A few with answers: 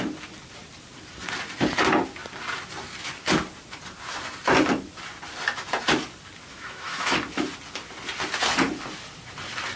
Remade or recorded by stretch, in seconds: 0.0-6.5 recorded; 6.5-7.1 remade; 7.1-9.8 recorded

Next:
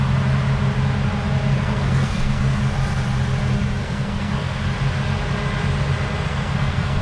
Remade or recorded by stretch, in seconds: 0.0-1.5 recorded; 1.5-2.6 remade; 2.6-3.8 recorded; 3.8-4.6 remade; 4.6-6.3 recorded; 6.3-7.0 remade

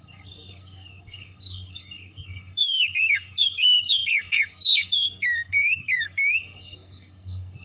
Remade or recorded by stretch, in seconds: 0.0-7.6 remade

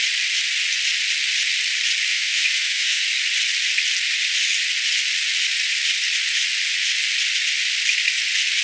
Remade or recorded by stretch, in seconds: 0.0-2.1 recorded; 2.1-3.0 remade; 3.0-8.6 recorded

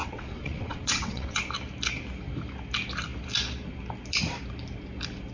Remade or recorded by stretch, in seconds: 0.0-1.4 remade; 1.4-5.3 recorded

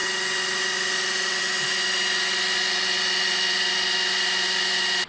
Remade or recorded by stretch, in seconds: 0.0-5.1 recorded

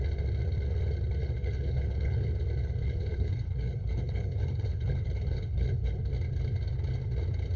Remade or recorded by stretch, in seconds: 0.0-1.2 recorded; 1.2-2.3 remade; 2.3-2.8 recorded; 2.8-6.1 remade; 6.1-7.6 recorded

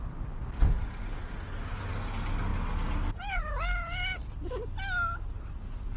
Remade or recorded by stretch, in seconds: 0.0-6.0 recorded